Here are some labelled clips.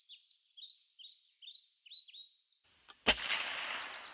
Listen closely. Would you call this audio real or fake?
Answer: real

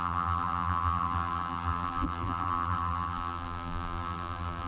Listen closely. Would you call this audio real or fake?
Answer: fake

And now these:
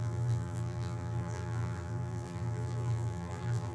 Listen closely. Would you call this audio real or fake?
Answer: fake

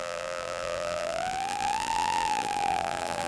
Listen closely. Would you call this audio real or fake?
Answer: fake